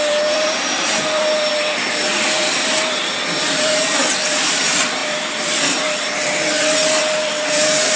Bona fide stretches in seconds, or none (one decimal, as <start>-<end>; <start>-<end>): none